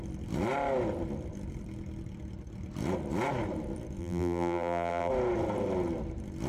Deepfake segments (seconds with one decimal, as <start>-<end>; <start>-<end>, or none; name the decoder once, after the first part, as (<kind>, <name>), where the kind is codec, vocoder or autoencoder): 4.0-5.1 (vocoder, BigVGAN v2)